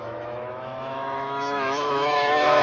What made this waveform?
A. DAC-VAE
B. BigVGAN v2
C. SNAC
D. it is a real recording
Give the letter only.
A